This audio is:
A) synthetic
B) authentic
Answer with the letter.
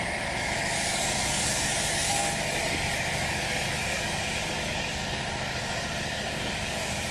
A